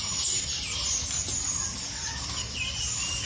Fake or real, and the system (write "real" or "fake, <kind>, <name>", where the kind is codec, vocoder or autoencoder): real